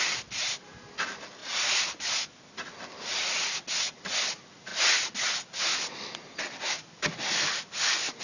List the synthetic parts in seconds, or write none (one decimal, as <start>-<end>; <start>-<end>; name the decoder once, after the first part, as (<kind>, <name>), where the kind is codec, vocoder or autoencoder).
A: none